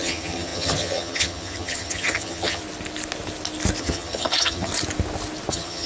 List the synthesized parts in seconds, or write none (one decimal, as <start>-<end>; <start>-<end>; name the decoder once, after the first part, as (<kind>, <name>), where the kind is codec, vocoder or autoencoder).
0.0-2.6 (vocoder, HiFi-GAN); 3.8-4.7; 5.5-5.9